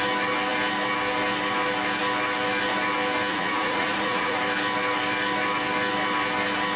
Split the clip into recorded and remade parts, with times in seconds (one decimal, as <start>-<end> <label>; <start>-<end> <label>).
0.0-3.3 recorded; 3.3-4.4 remade; 4.4-6.8 recorded